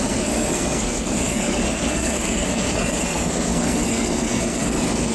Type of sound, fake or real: fake